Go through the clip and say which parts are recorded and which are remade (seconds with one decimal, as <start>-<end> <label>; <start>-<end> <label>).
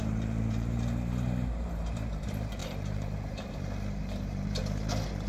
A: 0.0-4.6 remade; 4.6-5.3 recorded